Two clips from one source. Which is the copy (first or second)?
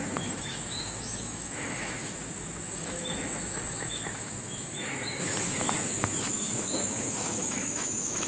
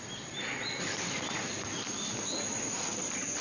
first